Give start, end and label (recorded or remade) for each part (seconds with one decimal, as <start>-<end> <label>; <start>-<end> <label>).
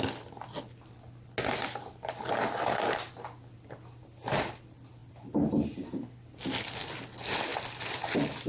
0.0-8.5 recorded